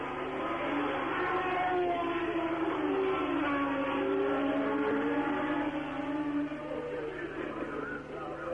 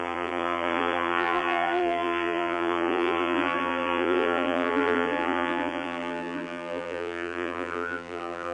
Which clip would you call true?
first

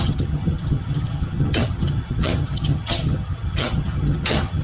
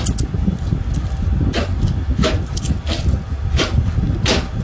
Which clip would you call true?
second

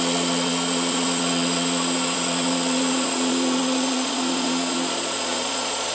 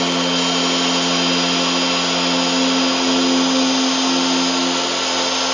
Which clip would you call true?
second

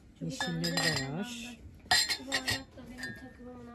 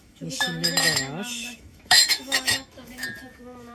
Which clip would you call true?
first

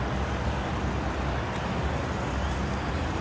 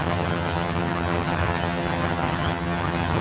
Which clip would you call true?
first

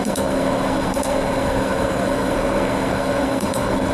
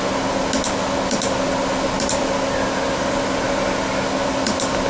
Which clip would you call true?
second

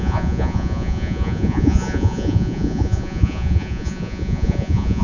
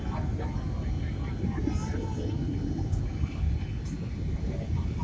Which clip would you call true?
second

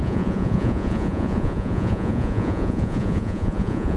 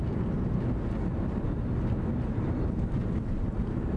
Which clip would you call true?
second